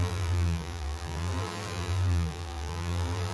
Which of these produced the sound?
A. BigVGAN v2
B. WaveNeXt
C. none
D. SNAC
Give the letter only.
A